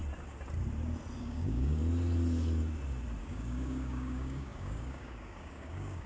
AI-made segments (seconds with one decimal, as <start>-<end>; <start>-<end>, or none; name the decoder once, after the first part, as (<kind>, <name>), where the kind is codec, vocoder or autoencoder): 1.2-1.8 (codec, DAC); 3.2-6.1